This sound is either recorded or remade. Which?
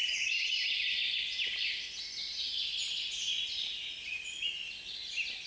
recorded